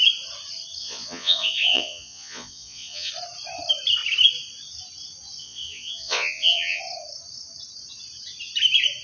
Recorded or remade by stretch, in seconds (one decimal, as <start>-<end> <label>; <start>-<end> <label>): 0.0-0.8 recorded; 0.8-3.1 remade; 3.1-5.4 recorded; 5.4-6.8 remade; 6.8-9.0 recorded